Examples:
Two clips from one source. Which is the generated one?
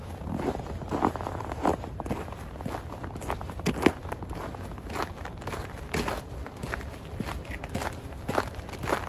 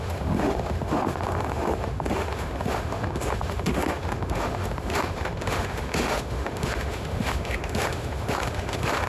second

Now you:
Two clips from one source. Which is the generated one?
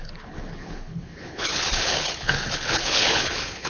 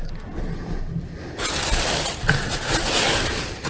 first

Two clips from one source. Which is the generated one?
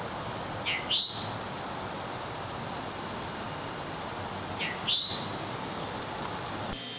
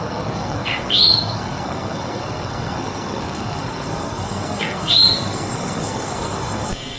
second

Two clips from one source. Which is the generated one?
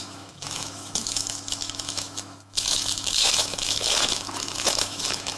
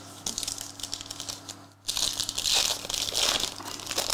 first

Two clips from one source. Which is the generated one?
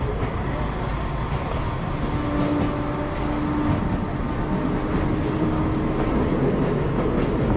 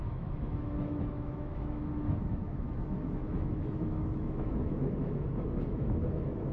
second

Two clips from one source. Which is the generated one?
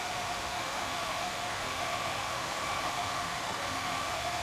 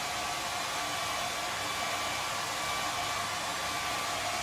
first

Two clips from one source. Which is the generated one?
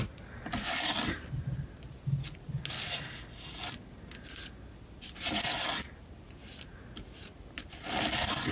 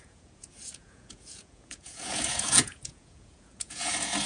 second